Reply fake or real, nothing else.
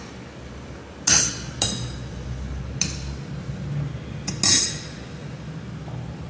real